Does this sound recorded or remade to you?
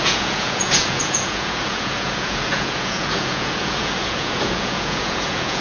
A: remade